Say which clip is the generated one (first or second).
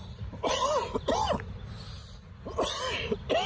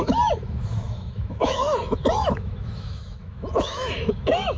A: second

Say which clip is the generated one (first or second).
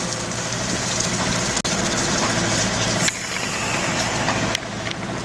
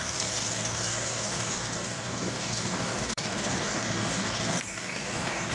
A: second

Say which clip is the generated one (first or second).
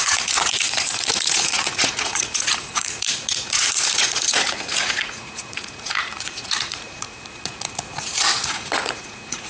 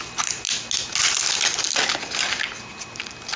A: first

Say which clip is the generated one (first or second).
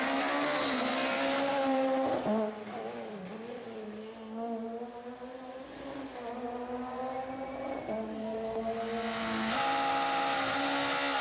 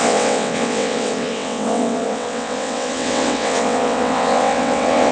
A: second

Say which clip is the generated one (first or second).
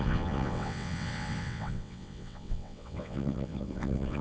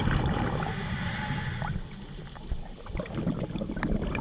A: first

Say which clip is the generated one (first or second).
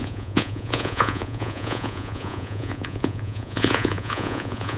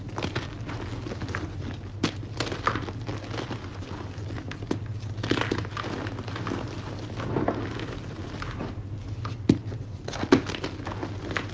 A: first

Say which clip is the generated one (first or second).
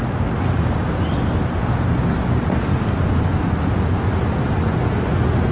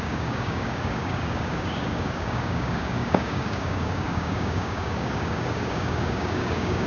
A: second